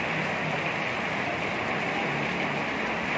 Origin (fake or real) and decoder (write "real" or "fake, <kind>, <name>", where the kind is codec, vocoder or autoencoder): real